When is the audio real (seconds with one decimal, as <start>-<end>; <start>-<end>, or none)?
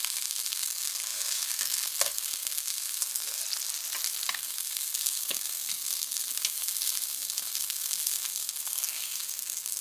3.4-4.3